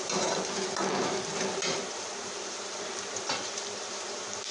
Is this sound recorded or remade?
remade